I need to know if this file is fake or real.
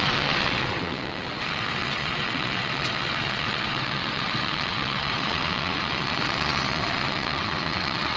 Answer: fake